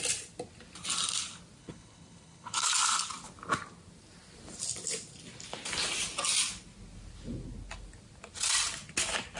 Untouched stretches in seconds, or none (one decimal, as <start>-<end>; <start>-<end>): 0.0-1.6; 2.7-9.4